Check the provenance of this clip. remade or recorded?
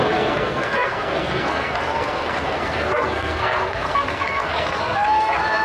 remade